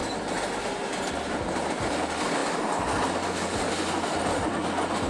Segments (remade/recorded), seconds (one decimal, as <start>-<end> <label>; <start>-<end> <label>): 0.0-5.1 recorded